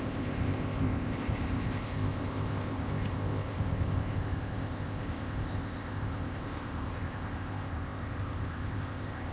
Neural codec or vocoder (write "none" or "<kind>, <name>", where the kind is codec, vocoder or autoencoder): codec, ZipCodec